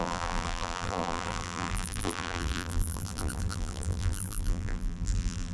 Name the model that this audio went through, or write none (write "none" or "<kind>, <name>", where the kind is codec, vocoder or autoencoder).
vocoder, BigVGAN v2